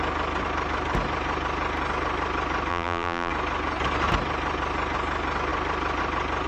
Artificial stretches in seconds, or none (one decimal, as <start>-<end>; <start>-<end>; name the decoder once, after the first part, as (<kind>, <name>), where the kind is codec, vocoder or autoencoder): 2.7-3.3 (vocoder, BigVGAN v2)